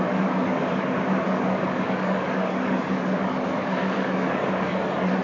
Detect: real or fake fake